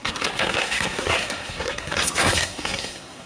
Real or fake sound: fake